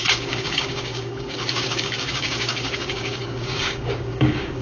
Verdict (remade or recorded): remade